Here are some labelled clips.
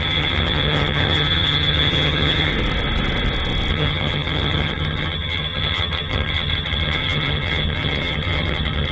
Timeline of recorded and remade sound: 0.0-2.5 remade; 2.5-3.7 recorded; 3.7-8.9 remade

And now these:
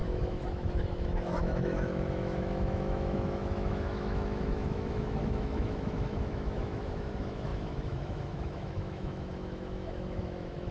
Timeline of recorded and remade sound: 0.0-10.7 remade

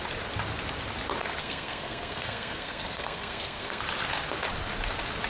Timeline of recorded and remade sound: 0.0-1.4 recorded; 1.4-3.8 remade; 3.8-5.3 recorded

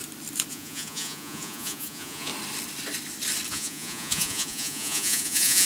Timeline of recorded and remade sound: 0.0-0.5 recorded; 0.5-2.3 remade; 2.3-3.5 recorded; 3.5-5.7 remade

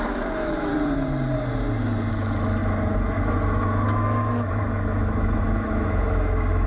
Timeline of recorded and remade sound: 0.0-0.7 remade; 0.7-2.1 recorded; 2.1-6.7 remade

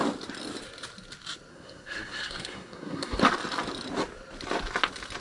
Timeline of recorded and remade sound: 0.0-1.5 recorded; 1.5-3.2 remade; 3.2-5.2 recorded